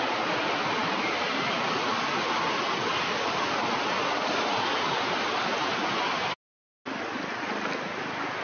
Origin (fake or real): real